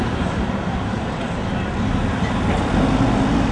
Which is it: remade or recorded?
recorded